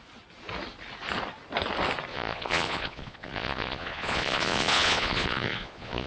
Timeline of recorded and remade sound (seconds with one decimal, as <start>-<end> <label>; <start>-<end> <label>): 0.0-2.1 recorded; 2.1-6.1 remade